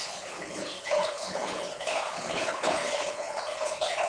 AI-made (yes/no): yes